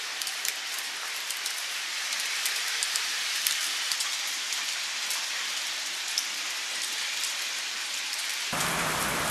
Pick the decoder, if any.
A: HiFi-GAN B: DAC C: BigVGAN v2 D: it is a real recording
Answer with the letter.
C